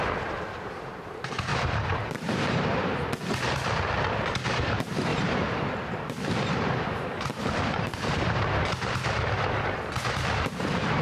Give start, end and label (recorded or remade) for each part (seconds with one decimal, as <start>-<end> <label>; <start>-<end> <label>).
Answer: 0.0-1.5 recorded; 1.5-2.9 remade; 2.9-5.1 recorded; 5.1-8.5 remade; 8.5-11.0 recorded